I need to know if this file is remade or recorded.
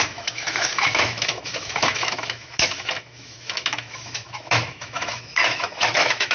remade